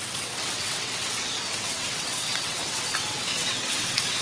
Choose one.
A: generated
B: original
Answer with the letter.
A